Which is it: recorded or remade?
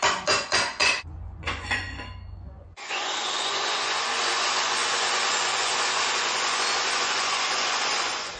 remade